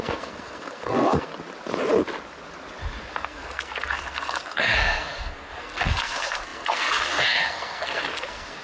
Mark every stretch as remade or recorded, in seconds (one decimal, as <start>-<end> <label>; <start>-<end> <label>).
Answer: 0.0-1.3 remade; 1.3-3.1 recorded; 3.1-8.6 remade